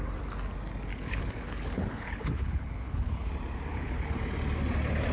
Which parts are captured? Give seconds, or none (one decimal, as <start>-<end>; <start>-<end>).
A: 0.0-0.9; 3.3-3.7; 4.2-5.1